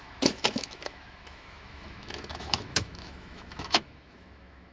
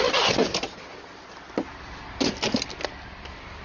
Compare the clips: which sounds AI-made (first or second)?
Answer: first